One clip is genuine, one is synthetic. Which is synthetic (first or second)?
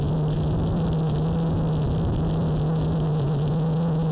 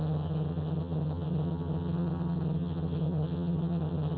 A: second